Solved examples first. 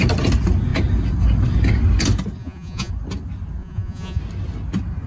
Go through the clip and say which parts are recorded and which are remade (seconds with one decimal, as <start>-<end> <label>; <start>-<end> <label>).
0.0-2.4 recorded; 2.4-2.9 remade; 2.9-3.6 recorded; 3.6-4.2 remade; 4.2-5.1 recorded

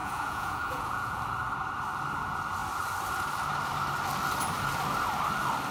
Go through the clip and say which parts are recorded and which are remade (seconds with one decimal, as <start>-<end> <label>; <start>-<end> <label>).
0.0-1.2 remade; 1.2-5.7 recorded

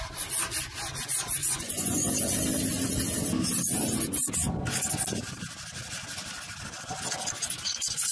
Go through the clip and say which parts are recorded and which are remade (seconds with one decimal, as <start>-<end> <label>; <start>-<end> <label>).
0.0-1.4 recorded; 1.4-2.1 remade; 2.1-8.1 recorded

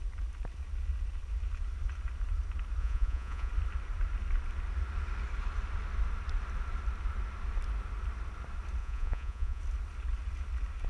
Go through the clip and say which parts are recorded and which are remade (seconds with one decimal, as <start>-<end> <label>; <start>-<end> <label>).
0.0-2.8 recorded; 2.8-3.5 remade; 3.5-8.8 recorded; 8.8-9.6 remade; 9.6-10.9 recorded

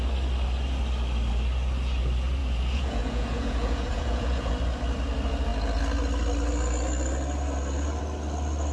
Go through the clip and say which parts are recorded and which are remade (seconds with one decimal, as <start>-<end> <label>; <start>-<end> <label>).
0.0-2.4 recorded; 2.4-4.6 remade; 4.6-8.7 recorded